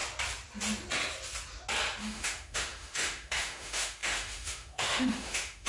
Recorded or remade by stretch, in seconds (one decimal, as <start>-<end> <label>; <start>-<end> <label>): 0.0-2.0 recorded; 2.0-5.7 remade

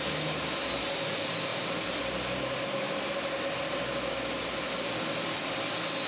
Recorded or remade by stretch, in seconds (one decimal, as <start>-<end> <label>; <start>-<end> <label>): 0.0-6.1 recorded

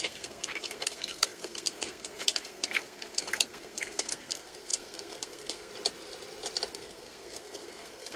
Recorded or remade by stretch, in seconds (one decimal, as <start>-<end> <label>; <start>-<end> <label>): 0.0-5.7 remade; 5.7-6.7 recorded; 6.7-8.2 remade

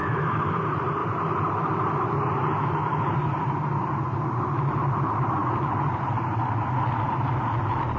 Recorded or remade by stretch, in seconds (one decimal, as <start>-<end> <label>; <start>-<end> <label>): 0.0-0.6 remade; 0.6-8.0 recorded

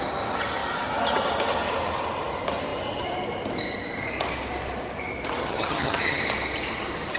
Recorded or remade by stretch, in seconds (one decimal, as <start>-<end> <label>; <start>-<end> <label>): 0.0-5.4 recorded; 5.4-6.2 remade; 6.2-7.2 recorded